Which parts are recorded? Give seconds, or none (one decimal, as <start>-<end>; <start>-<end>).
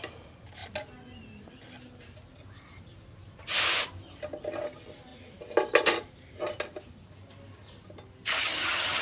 0.0-8.4